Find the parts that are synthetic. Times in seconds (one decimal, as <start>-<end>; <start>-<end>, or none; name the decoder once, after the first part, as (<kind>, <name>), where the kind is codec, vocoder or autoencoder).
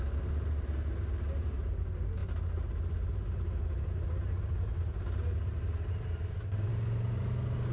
none